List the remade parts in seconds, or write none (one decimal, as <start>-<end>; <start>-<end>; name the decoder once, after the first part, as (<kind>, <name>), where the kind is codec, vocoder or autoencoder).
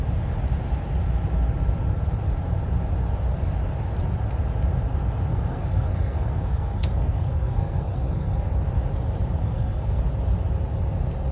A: 5.3-8.5 (codec, SNAC); 9.4-10.0